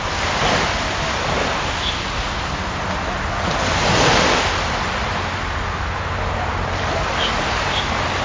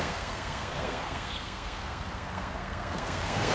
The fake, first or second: second